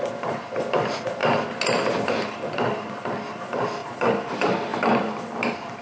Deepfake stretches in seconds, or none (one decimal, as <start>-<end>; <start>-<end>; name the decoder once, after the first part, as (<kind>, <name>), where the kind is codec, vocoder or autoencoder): 1.2-2.1 (vocoder, BigVGAN v2); 3.8-4.3; 4.7-5.2